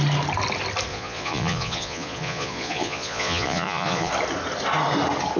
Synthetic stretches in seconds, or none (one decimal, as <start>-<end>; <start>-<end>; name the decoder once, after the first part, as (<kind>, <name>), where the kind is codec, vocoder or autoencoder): 0.9-4.1 (vocoder, Vocos)